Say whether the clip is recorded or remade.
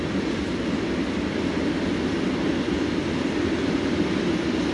recorded